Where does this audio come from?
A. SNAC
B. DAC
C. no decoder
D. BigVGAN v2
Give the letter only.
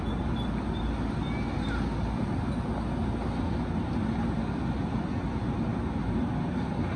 C